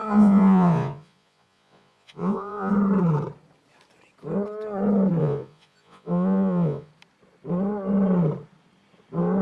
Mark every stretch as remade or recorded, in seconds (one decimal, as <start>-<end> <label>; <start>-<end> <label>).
0.0-2.7 remade; 2.7-5.2 recorded; 5.2-6.9 remade; 6.9-9.4 recorded